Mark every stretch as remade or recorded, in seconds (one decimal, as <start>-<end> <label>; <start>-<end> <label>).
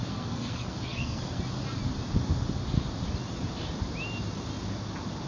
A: 0.0-1.4 remade; 1.4-5.3 recorded